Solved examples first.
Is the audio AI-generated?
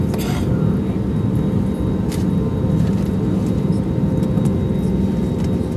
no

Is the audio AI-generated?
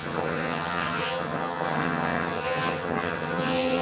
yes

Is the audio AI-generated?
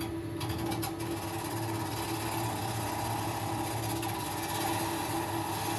no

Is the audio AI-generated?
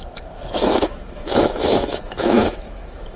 yes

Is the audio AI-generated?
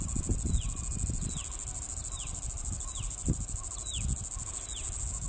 no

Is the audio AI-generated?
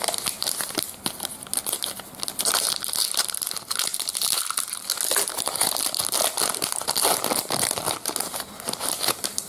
no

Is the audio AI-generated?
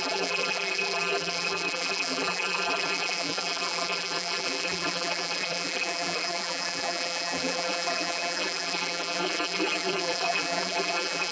yes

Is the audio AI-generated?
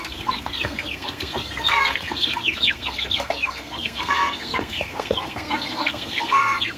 yes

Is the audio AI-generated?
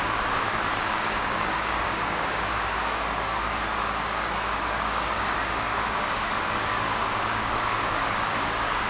yes